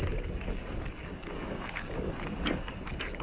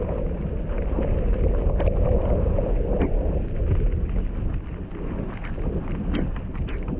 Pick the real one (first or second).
second